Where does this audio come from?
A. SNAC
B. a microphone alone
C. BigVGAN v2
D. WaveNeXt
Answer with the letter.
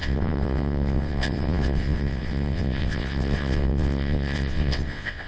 D